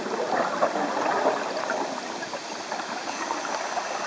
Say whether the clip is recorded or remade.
recorded